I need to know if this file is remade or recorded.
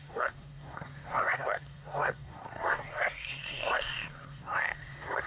remade